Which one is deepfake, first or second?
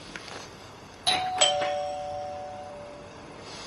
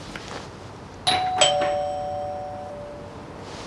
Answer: first